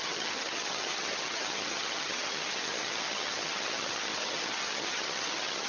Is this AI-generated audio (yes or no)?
yes